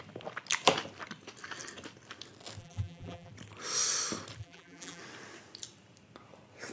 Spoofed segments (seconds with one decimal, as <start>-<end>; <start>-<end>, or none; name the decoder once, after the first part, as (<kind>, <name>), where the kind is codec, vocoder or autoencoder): 2.6-3.3 (vocoder, BigVGAN v2); 4.4-5.0